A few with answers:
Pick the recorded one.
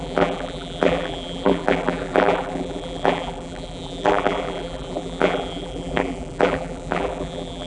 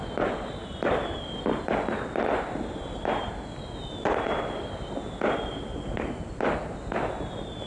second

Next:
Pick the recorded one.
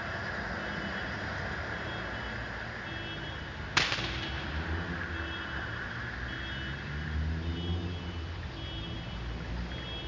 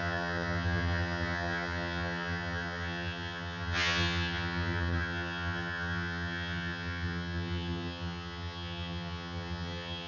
first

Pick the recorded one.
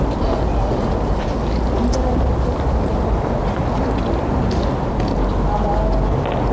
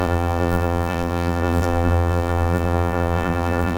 first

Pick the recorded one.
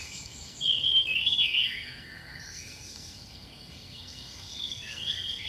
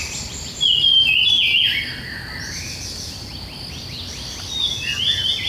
second